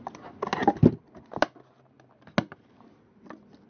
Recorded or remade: recorded